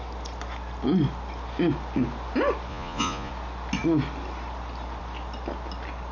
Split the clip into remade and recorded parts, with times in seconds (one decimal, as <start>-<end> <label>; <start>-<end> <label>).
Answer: 0.0-2.7 recorded; 2.7-3.3 remade; 3.3-6.1 recorded